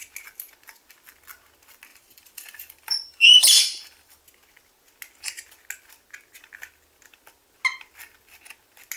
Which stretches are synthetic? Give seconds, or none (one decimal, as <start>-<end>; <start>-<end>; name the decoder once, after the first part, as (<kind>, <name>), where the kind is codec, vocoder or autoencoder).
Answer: 1.9-4.2 (vocoder, BigVGAN v2)